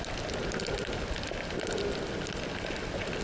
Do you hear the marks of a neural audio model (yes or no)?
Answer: no